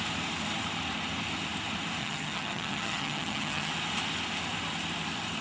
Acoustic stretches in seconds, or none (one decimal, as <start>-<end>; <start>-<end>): 0.0-2.0; 3.7-5.4